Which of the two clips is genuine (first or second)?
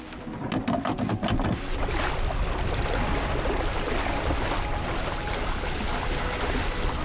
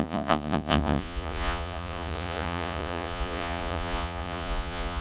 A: first